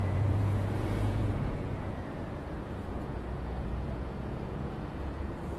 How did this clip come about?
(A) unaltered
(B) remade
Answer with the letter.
B